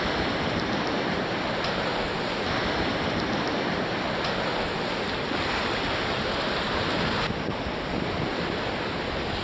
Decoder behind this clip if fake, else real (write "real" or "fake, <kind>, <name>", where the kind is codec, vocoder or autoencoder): real